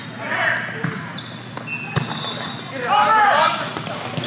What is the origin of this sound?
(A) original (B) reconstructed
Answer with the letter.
A